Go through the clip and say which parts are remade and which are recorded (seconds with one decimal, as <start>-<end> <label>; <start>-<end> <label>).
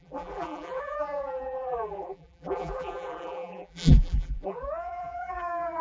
0.0-5.8 remade